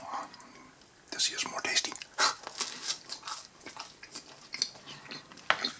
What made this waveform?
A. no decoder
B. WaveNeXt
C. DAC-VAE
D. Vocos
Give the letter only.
A